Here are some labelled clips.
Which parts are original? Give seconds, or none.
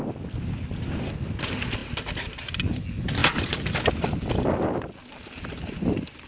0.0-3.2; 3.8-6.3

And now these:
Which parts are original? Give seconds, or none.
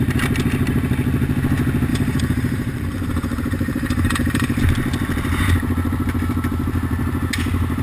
0.0-1.9; 4.6-7.8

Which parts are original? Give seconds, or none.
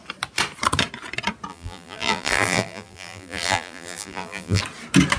0.0-1.5; 4.6-5.2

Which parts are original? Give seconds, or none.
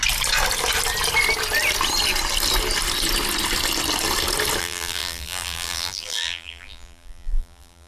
0.0-4.6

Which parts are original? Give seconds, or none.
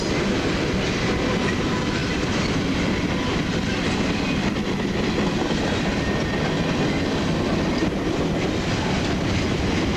0.0-10.0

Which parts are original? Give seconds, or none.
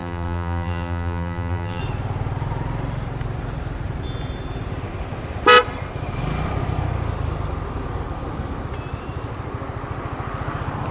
1.8-10.9